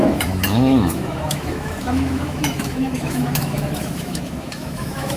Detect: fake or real fake